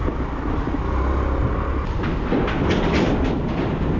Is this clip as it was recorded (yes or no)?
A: yes